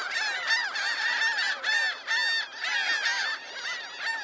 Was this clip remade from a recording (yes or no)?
no